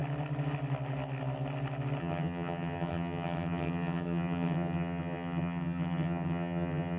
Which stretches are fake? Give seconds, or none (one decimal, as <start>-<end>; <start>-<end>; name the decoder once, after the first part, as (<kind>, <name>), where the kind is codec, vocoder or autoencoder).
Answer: 2.0-7.0 (vocoder, HiFi-GAN)